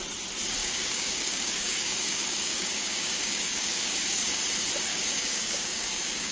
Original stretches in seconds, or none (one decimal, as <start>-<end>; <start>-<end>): 0.0-0.6; 4.4-4.9